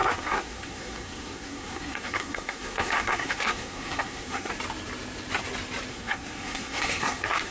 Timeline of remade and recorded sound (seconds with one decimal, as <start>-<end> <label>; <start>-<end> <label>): 0.0-4.5 remade; 4.5-5.9 recorded; 5.9-7.5 remade